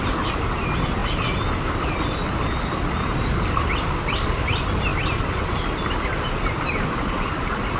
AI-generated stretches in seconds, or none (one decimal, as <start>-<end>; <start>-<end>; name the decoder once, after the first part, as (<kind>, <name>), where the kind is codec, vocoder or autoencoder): none